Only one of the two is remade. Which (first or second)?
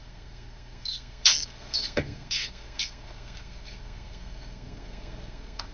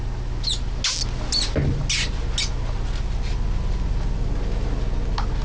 first